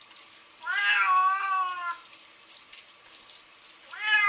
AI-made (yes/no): no